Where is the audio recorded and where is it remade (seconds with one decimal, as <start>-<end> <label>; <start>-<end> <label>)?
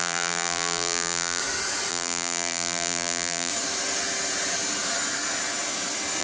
0.0-1.4 remade; 1.4-1.9 recorded; 1.9-3.5 remade; 3.5-6.2 recorded